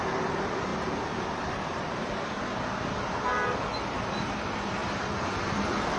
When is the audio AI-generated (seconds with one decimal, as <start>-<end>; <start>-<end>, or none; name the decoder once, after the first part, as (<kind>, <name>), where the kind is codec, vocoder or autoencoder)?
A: none

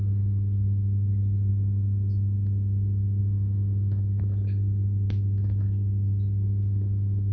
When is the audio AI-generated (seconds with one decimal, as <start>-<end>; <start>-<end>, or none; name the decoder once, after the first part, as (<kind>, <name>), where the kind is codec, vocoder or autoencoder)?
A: none

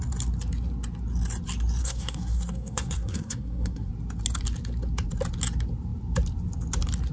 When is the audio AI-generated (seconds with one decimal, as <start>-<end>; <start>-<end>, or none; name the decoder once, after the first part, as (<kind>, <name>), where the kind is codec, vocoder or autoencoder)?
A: 1.8-3.9 (codec, SNAC)

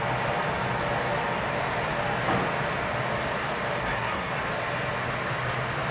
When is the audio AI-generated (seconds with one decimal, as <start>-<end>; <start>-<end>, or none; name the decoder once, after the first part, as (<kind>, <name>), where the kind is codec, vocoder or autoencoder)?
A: 3.8-4.4 (codec, SNAC)

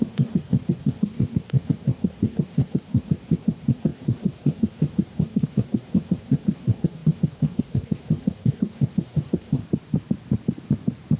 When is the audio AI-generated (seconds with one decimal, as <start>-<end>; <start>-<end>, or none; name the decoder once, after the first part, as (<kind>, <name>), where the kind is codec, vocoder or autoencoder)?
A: 0.0-9.6 (codec, SNAC)

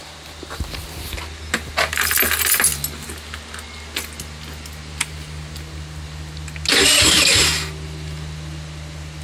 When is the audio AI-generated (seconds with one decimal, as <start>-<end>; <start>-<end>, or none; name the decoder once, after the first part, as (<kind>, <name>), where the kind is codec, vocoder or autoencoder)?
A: none

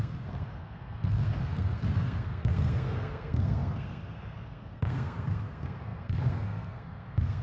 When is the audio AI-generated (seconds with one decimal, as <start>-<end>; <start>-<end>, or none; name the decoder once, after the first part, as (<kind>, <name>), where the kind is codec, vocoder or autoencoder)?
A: 0.0-7.4 (codec, SNAC)